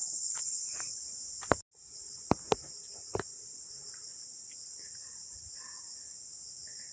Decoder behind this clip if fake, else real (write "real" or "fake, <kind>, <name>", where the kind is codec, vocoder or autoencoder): real